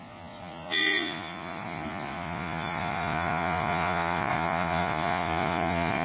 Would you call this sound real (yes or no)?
no